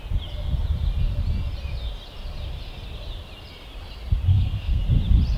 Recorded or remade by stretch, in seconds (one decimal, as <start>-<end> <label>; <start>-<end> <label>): 0.0-4.3 recorded; 4.3-4.8 remade; 4.8-5.4 recorded